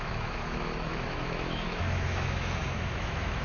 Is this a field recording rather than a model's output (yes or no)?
no